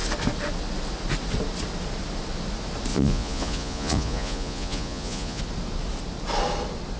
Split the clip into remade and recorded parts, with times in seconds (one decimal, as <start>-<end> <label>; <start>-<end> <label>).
0.0-2.9 recorded; 2.9-5.4 remade; 5.4-7.0 recorded